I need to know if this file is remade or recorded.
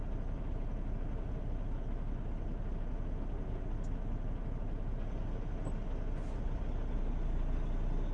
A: recorded